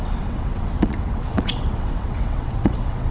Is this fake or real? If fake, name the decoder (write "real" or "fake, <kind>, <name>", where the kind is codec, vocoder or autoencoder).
fake, vocoder, WaveNeXt